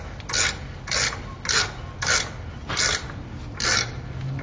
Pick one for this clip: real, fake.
real